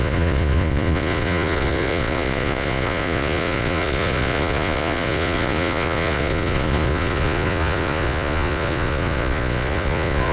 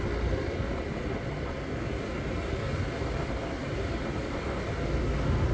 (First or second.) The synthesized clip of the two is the first